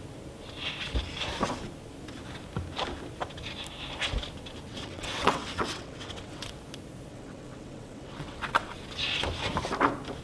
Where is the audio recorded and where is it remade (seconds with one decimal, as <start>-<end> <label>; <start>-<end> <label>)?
0.0-4.7 recorded; 4.7-6.5 remade; 6.5-7.1 recorded; 7.1-8.7 remade; 8.7-10.2 recorded